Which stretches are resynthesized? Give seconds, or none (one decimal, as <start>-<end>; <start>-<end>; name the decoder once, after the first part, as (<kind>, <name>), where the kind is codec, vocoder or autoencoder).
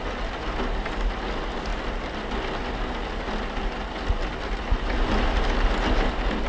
none